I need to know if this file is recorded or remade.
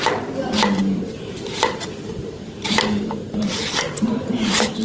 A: recorded